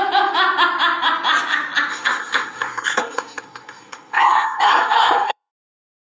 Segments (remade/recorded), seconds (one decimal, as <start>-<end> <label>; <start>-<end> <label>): 0.0-1.9 recorded; 1.9-5.5 remade; 5.5-6.0 recorded